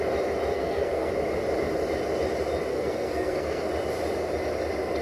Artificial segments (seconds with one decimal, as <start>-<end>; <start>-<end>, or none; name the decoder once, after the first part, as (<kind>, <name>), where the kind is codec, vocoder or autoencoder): 0.5-1.1 (codec, SNAC); 2.7-3.7